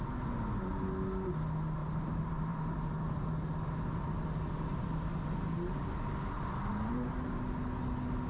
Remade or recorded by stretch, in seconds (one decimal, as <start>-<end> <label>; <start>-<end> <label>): 0.0-1.8 recorded; 1.8-2.9 remade; 2.9-4.7 recorded; 4.7-5.3 remade; 5.3-6.7 recorded; 6.7-7.4 remade; 7.4-8.3 recorded